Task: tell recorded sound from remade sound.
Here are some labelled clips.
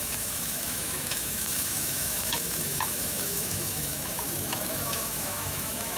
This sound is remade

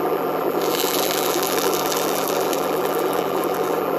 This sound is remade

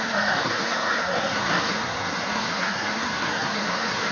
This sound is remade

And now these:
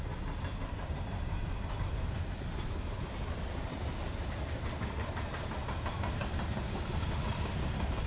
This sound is recorded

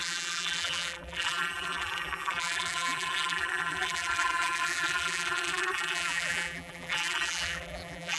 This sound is remade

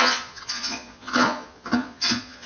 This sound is remade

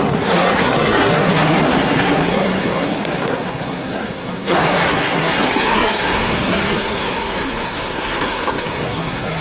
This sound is remade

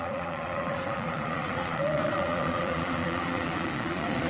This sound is remade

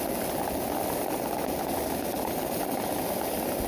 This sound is recorded